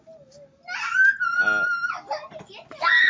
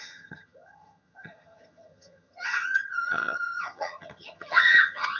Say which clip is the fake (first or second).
second